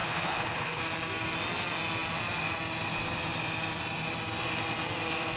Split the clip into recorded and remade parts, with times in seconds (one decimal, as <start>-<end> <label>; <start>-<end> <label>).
0.0-0.8 remade; 0.8-5.4 recorded